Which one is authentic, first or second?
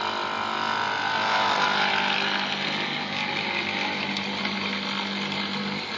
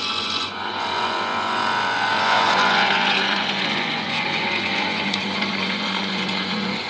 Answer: first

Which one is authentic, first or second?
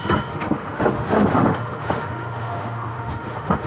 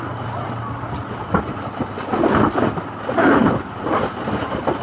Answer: second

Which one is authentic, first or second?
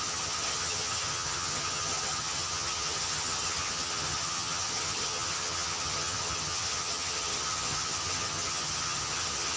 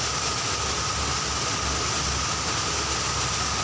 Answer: second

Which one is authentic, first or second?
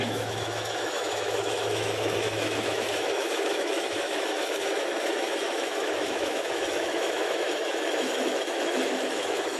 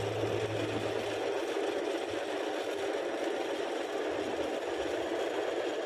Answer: second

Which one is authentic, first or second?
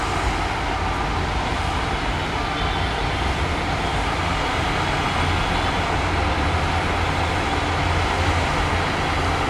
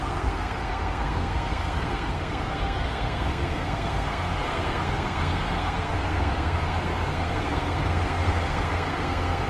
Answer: first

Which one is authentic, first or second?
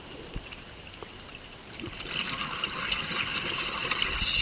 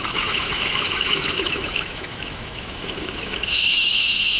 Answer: first